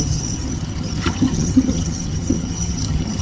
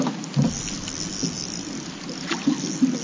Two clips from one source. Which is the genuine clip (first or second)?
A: second